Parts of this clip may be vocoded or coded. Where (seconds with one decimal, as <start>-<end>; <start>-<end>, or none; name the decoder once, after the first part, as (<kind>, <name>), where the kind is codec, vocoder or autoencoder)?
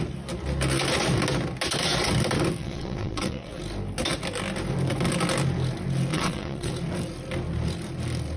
2.6-3.6 (vocoder, WaveNeXt); 6.1-6.7